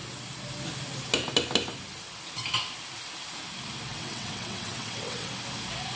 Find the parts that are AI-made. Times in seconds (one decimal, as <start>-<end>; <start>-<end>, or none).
3.9-5.3